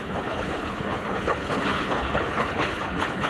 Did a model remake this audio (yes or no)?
yes